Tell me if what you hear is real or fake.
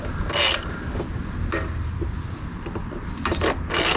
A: real